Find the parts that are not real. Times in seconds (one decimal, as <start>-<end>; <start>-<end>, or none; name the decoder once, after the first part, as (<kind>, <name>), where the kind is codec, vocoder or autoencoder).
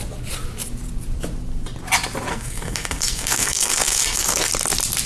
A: 2.3-4.5 (codec, SNAC)